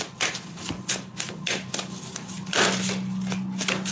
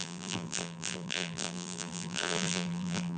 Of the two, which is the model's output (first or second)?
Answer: second